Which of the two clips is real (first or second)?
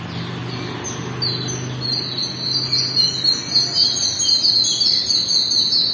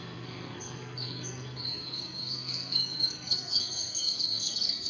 first